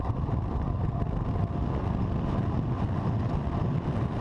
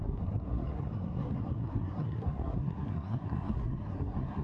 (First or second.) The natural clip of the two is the first